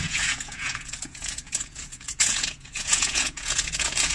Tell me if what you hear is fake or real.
fake